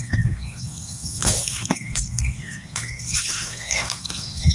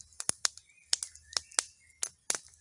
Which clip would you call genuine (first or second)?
second